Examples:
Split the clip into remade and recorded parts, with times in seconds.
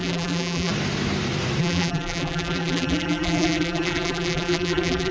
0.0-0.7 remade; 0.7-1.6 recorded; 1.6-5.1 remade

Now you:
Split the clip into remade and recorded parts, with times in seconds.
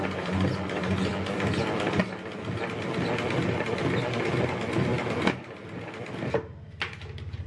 0.0-7.5 recorded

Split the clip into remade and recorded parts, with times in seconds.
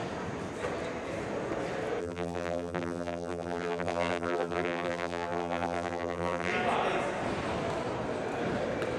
0.0-2.0 recorded; 2.0-6.5 remade; 6.5-9.0 recorded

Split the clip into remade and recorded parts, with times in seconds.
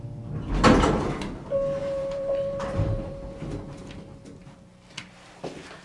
0.0-1.8 recorded; 1.8-3.3 remade; 3.3-5.8 recorded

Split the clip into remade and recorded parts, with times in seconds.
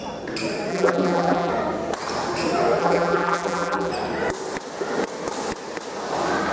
0.0-0.7 recorded; 0.7-1.5 remade; 1.5-2.8 recorded; 2.8-3.9 remade; 3.9-6.5 recorded